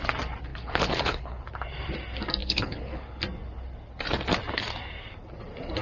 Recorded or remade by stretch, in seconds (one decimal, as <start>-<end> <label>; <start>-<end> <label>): 0.0-0.5 recorded; 0.5-1.4 remade; 1.4-2.4 recorded; 2.4-3.2 remade; 3.2-5.8 recorded